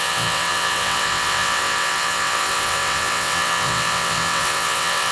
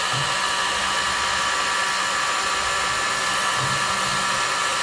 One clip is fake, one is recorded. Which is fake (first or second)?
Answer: first